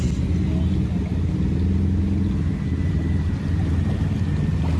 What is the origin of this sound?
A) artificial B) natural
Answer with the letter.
B